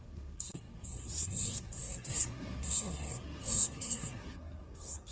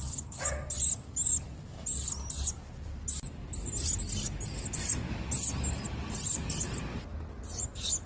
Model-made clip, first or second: first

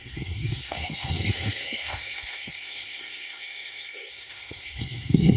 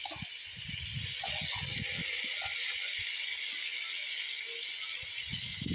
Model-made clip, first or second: first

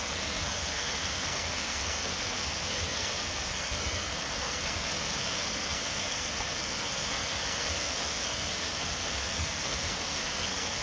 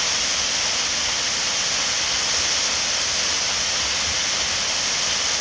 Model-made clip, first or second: first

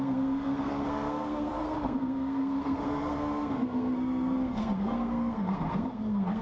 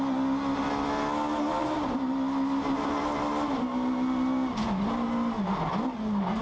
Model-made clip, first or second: first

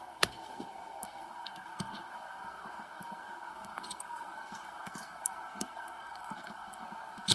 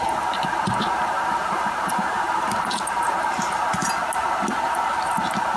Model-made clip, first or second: first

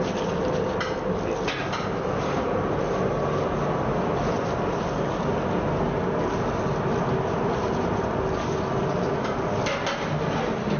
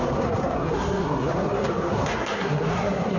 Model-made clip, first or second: second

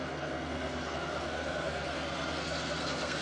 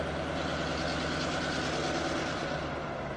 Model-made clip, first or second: first